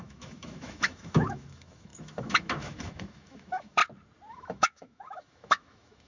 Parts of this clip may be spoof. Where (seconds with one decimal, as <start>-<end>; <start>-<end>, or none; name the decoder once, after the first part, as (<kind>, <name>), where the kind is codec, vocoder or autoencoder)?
0.0-3.8 (autoencoder, DAC-VAE); 4.3-6.1